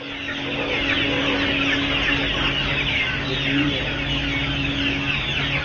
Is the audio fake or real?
real